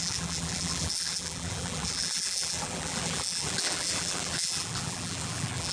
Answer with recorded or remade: remade